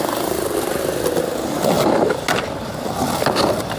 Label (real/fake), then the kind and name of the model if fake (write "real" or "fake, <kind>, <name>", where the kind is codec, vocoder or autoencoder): real